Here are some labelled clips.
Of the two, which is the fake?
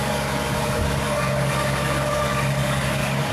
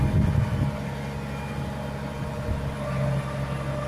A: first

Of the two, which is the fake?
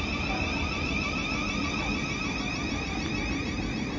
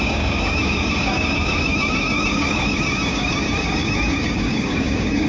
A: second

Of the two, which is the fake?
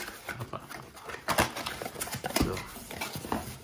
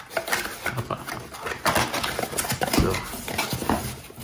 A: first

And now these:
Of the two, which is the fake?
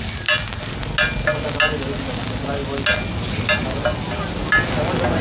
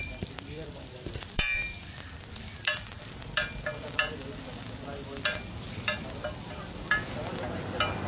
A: second